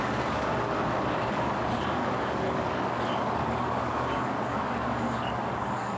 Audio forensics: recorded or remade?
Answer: remade